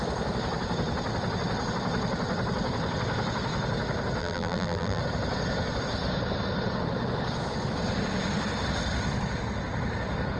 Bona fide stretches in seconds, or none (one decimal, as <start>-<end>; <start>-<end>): 0.0-4.2; 5.0-10.4

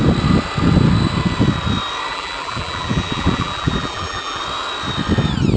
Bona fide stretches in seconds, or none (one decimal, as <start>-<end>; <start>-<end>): 0.0-2.1; 4.4-5.6

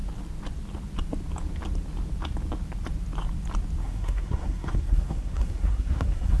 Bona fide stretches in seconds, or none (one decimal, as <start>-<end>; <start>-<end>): 0.0-3.8

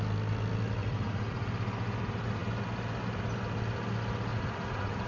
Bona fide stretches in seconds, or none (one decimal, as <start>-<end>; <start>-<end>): 0.0-0.8; 1.5-4.3

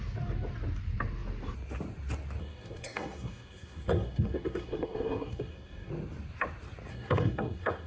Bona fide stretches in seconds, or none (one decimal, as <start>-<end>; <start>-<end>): 0.0-2.4; 5.9-6.9

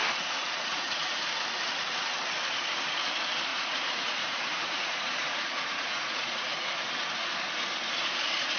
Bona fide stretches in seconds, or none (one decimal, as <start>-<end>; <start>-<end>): 1.3-3.5; 6.7-8.6

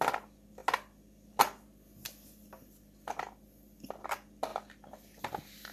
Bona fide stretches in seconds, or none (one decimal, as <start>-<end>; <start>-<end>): 0.0-5.7